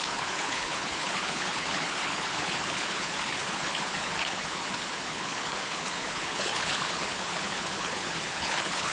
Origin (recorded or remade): remade